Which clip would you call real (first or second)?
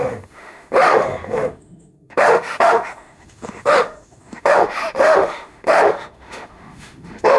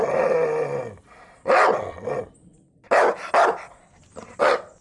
second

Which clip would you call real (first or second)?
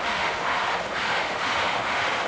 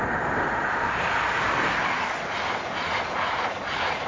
second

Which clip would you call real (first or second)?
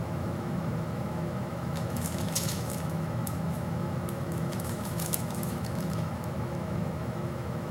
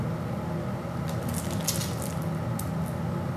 second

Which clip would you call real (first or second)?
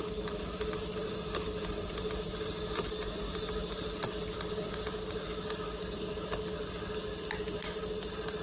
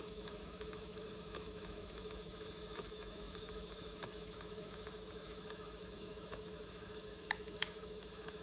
first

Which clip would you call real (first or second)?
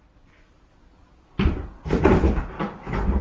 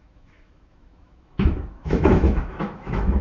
first